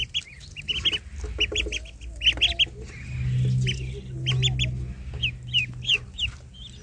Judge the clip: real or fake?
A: real